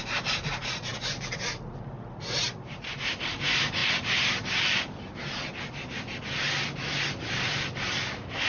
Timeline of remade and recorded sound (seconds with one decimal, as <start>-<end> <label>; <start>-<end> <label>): 0.0-8.5 recorded